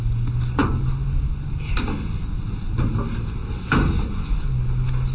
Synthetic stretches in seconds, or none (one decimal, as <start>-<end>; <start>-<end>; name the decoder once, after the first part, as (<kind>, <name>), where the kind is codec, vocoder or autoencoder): none